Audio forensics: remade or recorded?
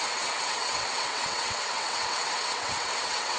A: remade